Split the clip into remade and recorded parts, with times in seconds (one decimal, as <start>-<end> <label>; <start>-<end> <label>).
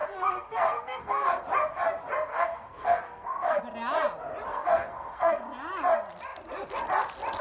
0.0-1.4 remade; 1.4-2.3 recorded; 2.3-3.6 remade; 3.6-4.5 recorded; 4.5-5.4 remade; 5.4-7.4 recorded